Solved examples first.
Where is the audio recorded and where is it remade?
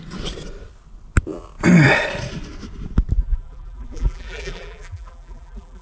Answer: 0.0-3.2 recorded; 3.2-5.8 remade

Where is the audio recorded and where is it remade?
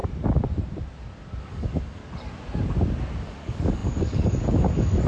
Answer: 0.0-1.4 recorded; 1.4-2.0 remade; 2.0-3.2 recorded; 3.2-5.1 remade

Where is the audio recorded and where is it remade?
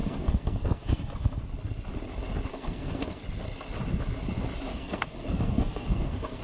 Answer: 0.0-1.4 remade; 1.4-2.5 recorded; 2.5-3.2 remade; 3.2-4.7 recorded; 4.7-6.4 remade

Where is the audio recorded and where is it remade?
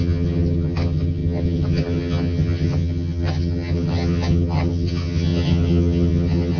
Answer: 0.0-6.6 remade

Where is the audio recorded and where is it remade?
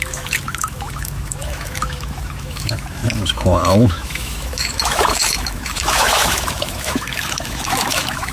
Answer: 0.0-8.3 remade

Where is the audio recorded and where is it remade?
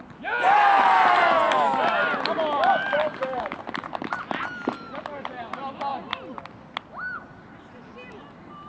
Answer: 0.0-3.0 recorded; 3.0-3.6 remade; 3.6-8.7 recorded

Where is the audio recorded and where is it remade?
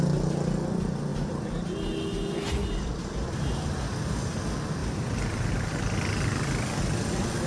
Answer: 0.0-2.6 recorded; 2.6-3.3 remade; 3.3-4.8 recorded; 4.8-6.8 remade; 6.8-7.5 recorded